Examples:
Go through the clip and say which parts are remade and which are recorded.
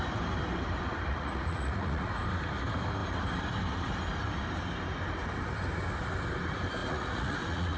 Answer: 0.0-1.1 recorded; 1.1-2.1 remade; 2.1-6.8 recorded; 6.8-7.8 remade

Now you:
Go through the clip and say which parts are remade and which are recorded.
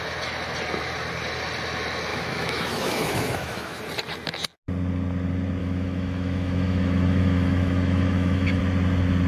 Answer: 0.0-2.1 recorded; 2.1-3.8 remade; 3.8-5.6 recorded; 5.6-8.6 remade; 8.6-9.3 recorded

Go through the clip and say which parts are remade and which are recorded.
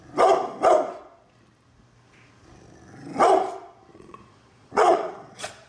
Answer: 0.0-3.9 recorded; 3.9-5.7 remade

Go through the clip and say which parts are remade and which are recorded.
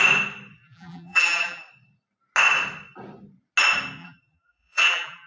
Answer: 0.0-0.6 recorded; 0.6-1.6 remade; 1.6-4.0 recorded; 4.0-5.3 remade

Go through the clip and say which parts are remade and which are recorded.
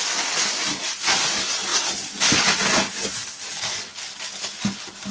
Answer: 0.0-5.1 recorded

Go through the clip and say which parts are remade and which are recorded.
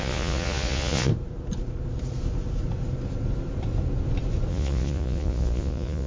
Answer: 0.0-1.1 remade; 1.1-4.5 recorded; 4.5-6.1 remade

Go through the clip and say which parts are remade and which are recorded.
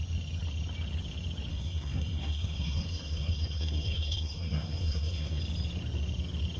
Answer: 0.0-1.5 recorded; 1.5-5.4 remade; 5.4-6.6 recorded